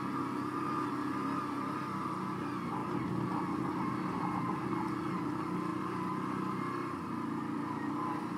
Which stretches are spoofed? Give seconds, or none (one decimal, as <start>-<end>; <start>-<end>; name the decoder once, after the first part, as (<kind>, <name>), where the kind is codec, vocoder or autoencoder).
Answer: none